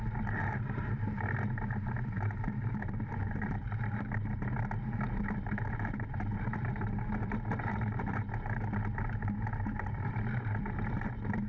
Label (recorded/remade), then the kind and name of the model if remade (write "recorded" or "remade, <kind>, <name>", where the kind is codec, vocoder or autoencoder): remade, vocoder, BigVGAN v2